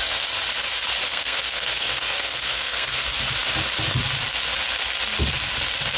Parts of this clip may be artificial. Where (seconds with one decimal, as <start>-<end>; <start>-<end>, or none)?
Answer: 1.1-2.9